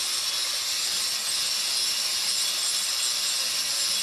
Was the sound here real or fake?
real